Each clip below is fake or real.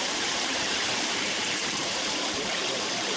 fake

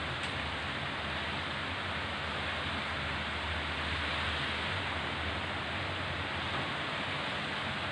real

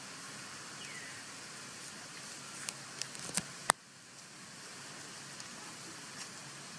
real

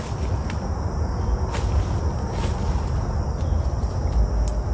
real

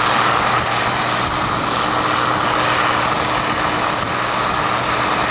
real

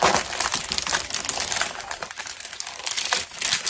fake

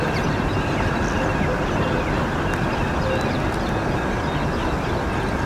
real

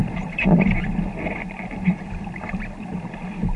real